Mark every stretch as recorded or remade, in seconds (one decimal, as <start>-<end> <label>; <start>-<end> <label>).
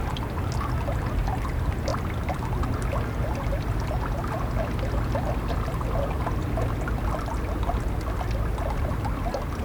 0.0-1.9 recorded; 1.9-3.9 remade; 3.9-9.6 recorded